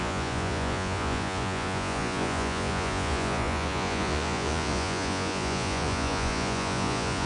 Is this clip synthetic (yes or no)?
yes